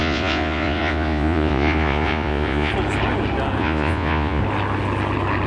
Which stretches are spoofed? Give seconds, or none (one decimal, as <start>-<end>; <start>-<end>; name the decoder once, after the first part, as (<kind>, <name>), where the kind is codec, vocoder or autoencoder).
0.0-2.7 (vocoder, Vocos); 3.6-4.4